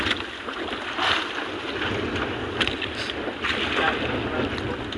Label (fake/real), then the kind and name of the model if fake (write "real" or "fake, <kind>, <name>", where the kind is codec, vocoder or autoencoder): real